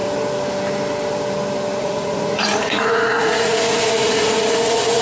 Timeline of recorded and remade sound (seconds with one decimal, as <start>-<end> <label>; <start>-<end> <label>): 0.0-1.8 recorded; 1.8-5.0 remade